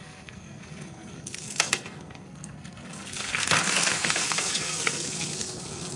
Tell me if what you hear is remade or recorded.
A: remade